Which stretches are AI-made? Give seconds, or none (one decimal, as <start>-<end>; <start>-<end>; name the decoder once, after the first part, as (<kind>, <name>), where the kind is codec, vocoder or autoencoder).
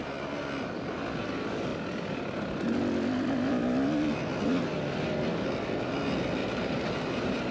6.4-7.5 (vocoder, BigVGAN v2)